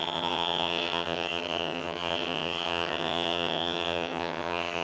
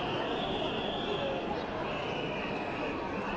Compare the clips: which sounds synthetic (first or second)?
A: first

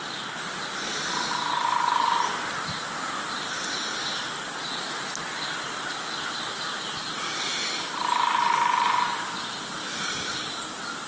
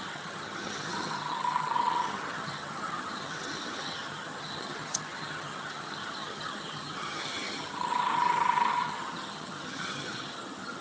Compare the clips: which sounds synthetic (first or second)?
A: second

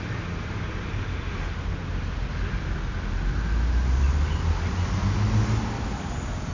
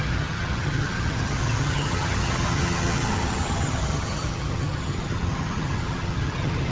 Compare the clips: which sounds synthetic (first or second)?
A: second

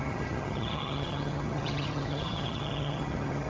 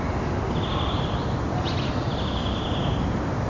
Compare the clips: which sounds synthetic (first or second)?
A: first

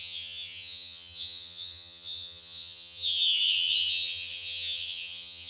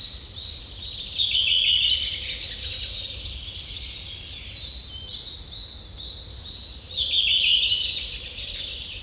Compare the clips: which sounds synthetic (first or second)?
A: first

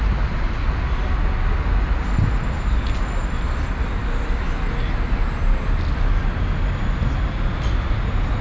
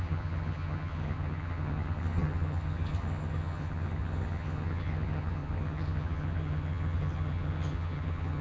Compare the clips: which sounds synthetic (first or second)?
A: second